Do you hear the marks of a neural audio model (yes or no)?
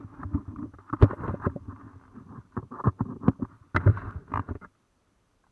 no